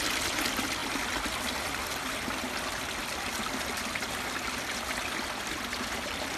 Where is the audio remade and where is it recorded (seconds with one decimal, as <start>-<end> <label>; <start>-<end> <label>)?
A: 0.0-6.4 recorded